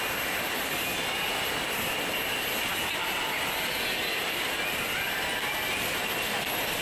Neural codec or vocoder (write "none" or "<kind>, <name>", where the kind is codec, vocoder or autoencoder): none